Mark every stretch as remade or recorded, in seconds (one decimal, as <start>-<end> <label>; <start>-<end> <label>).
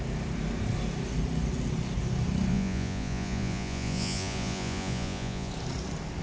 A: 0.0-2.5 recorded; 2.5-5.5 remade; 5.5-6.2 recorded